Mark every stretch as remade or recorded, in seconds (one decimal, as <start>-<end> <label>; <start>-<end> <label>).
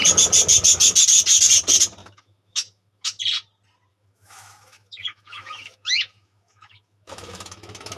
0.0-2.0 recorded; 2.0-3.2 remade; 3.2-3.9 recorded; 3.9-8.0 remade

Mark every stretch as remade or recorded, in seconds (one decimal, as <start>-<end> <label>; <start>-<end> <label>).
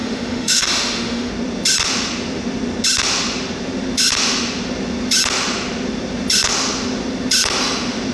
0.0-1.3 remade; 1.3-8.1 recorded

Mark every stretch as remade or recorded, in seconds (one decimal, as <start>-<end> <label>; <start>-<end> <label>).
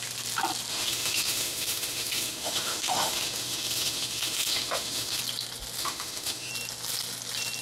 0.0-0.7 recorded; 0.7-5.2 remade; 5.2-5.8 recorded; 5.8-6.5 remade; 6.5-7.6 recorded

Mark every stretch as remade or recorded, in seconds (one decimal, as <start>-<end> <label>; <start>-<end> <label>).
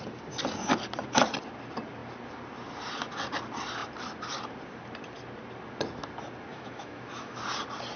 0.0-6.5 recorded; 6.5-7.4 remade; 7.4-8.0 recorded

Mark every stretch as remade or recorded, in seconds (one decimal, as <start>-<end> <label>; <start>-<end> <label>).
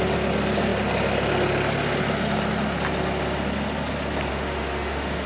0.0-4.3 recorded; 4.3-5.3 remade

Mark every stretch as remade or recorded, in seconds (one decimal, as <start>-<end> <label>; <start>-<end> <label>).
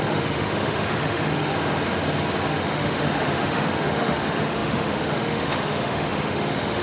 0.0-1.5 remade; 1.5-2.5 recorded; 2.5-6.8 remade